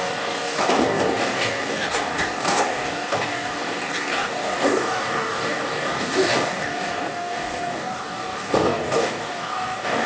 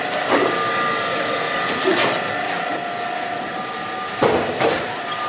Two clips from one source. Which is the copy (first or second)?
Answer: first